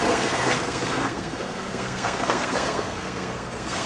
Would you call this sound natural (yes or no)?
no